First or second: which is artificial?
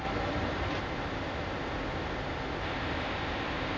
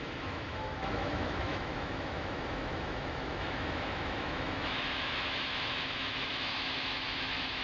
second